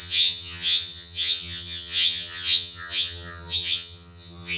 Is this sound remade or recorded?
remade